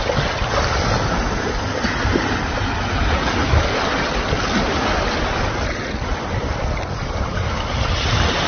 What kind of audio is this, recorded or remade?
recorded